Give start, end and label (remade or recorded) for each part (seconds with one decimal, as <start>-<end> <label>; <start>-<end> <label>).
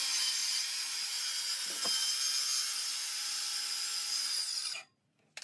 0.0-0.4 recorded; 0.4-1.2 remade; 1.2-5.4 recorded